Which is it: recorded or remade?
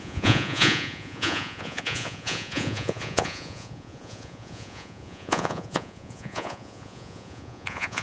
remade